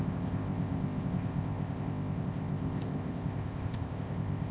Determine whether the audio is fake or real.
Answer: fake